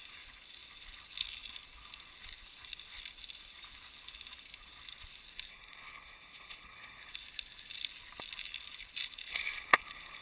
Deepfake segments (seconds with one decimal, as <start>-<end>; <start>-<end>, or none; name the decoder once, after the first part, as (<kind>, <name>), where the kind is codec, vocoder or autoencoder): 5.5-7.1 (codec, HILCodec); 9.3-10.2